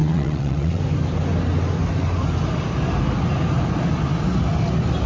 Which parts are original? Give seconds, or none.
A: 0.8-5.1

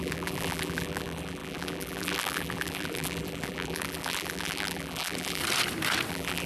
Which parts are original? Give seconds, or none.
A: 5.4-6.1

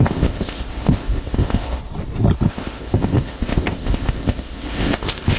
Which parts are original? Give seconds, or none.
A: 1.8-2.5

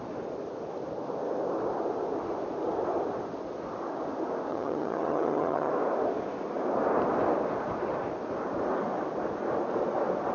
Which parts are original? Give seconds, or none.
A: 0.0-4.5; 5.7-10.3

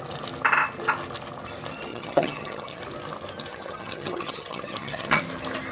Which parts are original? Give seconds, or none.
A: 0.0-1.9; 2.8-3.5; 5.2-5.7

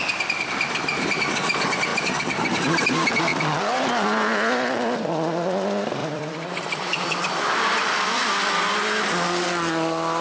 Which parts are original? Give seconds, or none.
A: 0.0-1.9; 2.8-6.0; 8.5-10.2

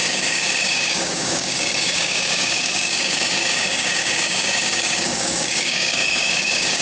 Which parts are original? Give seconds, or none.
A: none

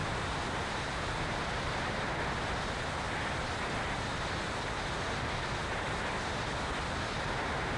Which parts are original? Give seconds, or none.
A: 0.0-7.8